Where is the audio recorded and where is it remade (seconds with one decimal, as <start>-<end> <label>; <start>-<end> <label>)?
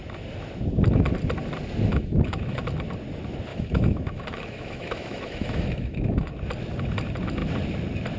0.0-1.9 recorded; 1.9-2.6 remade; 2.6-3.5 recorded; 3.5-6.3 remade; 6.3-8.2 recorded